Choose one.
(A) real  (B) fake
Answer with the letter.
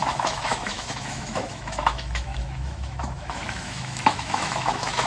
B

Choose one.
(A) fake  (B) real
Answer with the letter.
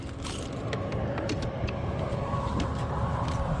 A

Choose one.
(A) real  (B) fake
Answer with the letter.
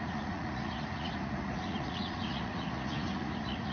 B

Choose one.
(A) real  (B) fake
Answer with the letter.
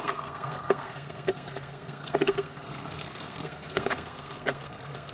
B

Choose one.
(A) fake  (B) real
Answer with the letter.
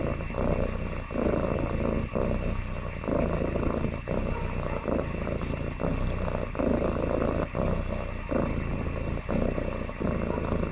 B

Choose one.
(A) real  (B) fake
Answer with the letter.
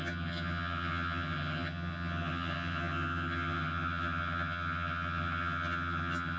B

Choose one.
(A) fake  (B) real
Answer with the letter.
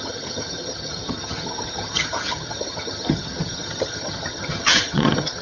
A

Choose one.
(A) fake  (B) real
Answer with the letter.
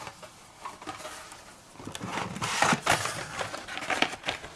B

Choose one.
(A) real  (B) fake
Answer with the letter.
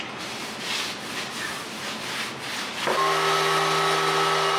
A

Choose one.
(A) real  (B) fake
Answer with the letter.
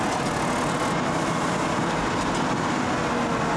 A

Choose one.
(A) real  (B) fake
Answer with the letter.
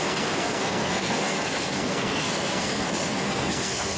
B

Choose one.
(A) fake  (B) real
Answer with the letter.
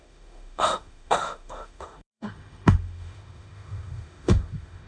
A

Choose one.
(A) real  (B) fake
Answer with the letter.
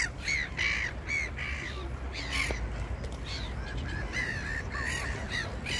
A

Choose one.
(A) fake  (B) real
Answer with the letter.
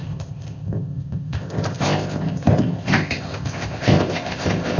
A